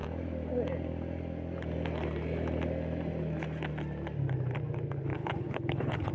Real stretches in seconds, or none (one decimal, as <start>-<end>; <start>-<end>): 0.0-5.1